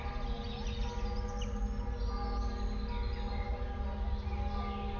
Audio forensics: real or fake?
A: real